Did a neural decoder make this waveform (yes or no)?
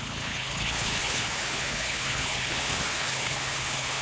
yes